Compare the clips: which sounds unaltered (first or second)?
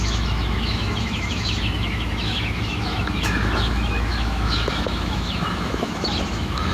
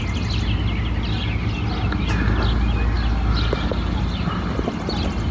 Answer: second